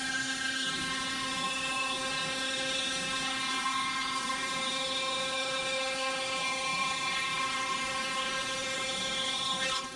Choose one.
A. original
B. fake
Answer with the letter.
B